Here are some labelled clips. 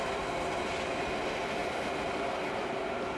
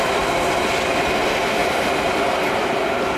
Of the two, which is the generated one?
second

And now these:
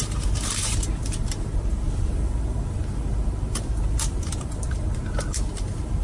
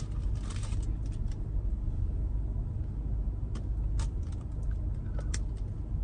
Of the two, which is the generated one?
first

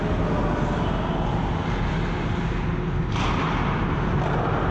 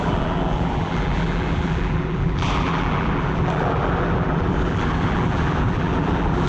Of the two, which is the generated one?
second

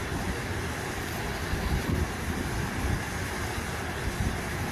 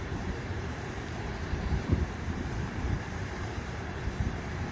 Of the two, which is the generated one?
second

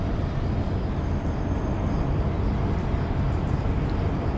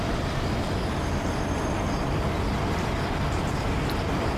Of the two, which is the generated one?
second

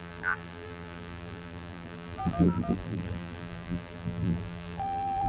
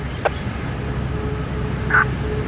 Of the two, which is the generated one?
first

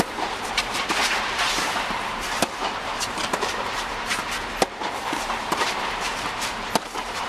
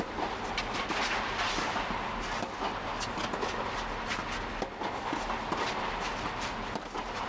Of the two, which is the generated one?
first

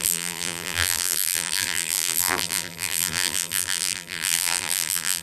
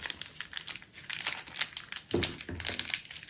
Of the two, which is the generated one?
first